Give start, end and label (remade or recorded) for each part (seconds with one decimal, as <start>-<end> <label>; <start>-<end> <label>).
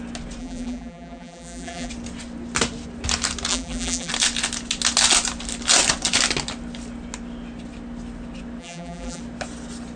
0.0-0.4 recorded; 0.4-1.9 remade; 1.9-3.5 recorded; 3.5-4.1 remade; 4.1-8.6 recorded; 8.6-9.2 remade; 9.2-10.0 recorded